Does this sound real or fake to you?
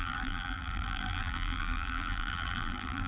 fake